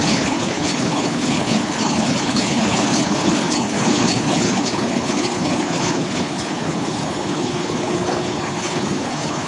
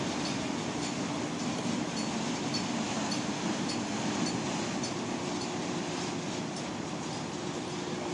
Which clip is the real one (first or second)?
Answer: second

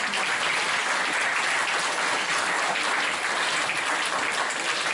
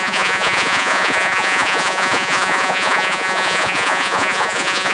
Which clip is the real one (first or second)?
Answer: first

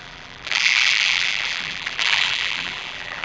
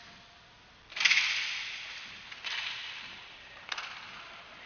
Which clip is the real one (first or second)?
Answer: second